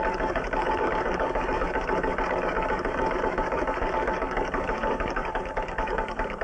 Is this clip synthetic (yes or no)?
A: yes